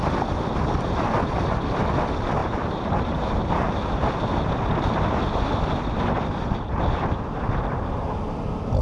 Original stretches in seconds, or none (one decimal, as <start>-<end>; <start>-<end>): 0.0-2.4; 4.0-8.8